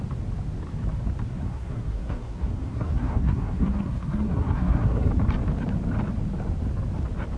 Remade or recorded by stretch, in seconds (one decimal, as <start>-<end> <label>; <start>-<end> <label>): 0.0-1.3 recorded; 1.3-5.1 remade; 5.1-7.4 recorded